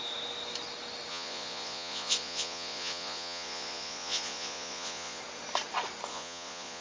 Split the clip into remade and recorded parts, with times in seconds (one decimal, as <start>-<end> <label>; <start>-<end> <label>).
0.0-1.1 recorded; 1.1-5.2 remade; 5.2-6.1 recorded; 6.1-6.8 remade